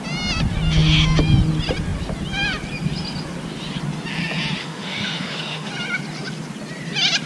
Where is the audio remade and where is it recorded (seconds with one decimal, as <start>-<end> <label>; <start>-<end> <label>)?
0.0-4.6 recorded; 4.6-5.7 remade; 5.7-7.3 recorded